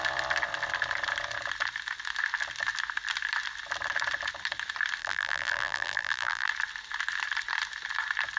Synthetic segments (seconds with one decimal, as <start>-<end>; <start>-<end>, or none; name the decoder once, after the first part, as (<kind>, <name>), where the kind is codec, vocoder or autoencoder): 5.0-6.5 (vocoder, BigVGAN v2)